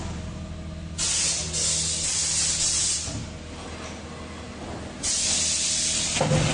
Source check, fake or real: real